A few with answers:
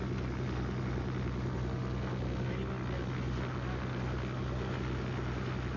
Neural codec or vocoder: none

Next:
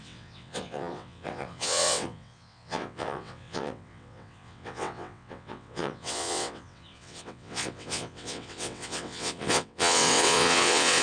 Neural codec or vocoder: vocoder, WaveNeXt